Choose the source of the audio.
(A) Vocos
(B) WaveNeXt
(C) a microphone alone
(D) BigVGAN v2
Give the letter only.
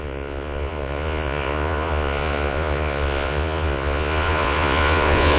A